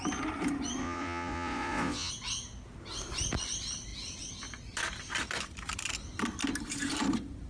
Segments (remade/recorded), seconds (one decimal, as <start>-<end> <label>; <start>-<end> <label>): 0.0-0.8 recorded; 0.8-2.1 remade; 2.1-7.5 recorded